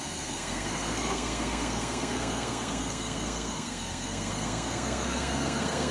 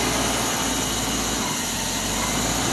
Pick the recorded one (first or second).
second